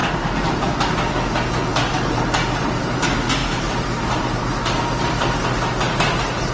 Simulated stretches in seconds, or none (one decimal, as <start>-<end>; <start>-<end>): 0.0-0.9; 1.7-3.0; 3.4-6.5